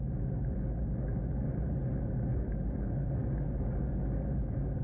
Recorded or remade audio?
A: recorded